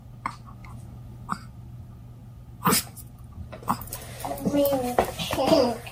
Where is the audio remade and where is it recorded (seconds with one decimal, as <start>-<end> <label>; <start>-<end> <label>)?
0.0-5.9 recorded